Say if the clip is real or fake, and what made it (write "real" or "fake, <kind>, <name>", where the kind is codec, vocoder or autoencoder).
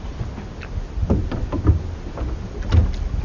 real